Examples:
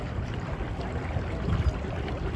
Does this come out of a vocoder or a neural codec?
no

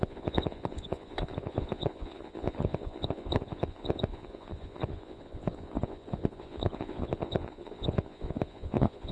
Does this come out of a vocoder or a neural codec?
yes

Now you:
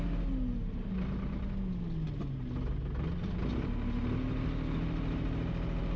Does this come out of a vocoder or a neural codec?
no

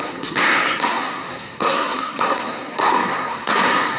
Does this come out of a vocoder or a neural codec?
yes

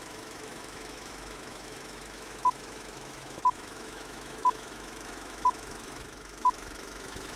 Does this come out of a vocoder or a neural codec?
yes